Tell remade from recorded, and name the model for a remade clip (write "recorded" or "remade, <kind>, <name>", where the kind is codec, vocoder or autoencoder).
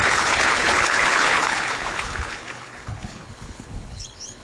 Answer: remade, codec, HILCodec